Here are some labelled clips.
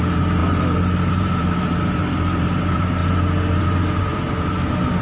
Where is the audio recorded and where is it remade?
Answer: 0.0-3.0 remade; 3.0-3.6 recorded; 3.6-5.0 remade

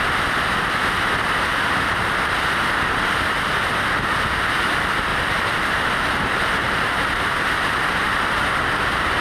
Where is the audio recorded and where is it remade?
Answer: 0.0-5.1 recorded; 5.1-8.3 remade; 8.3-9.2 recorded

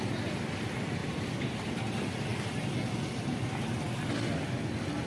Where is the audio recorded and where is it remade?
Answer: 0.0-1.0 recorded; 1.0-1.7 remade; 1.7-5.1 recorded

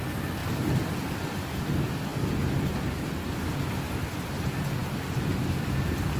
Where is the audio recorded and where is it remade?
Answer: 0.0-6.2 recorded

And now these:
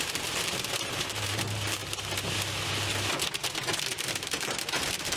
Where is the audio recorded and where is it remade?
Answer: 0.0-1.8 remade; 1.8-3.8 recorded; 3.8-5.2 remade

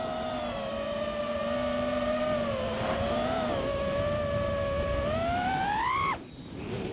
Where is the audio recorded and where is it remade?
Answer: 0.0-6.9 remade